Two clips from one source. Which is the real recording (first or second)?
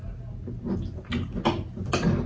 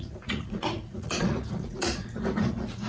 first